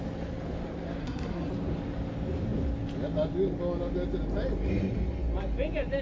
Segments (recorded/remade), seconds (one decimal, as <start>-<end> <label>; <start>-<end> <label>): 0.0-1.0 recorded; 1.0-1.5 remade; 1.5-6.0 recorded